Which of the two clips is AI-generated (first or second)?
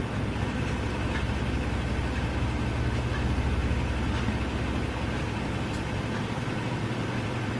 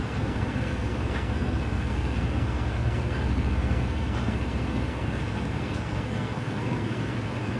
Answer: second